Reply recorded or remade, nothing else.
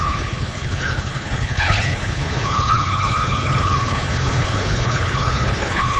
remade